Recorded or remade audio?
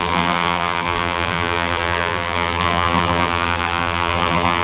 remade